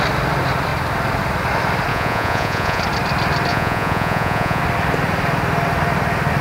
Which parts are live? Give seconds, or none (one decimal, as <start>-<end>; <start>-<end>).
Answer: 0.0-1.9; 2.8-3.5; 4.6-6.4